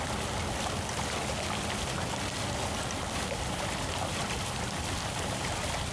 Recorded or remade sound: recorded